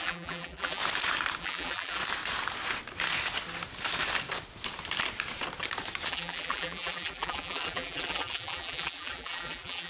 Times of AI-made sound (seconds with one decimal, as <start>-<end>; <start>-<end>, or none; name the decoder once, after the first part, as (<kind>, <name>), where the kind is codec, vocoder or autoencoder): 0.0-0.8 (vocoder, BigVGAN v2); 1.4-2.0; 6.1-9.9